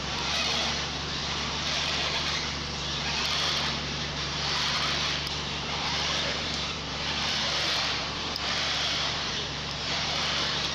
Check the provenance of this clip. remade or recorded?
remade